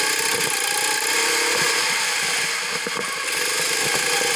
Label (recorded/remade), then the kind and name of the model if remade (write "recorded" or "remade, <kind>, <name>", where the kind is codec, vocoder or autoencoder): recorded